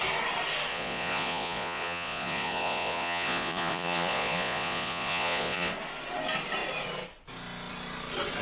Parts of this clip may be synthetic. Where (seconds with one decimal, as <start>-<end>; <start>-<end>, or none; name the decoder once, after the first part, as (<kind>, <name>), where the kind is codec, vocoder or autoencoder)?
0.7-5.7 (vocoder, Vocos)